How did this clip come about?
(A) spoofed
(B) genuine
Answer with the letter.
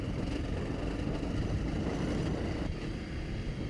B